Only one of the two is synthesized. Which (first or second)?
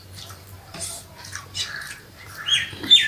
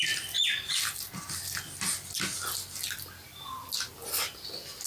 first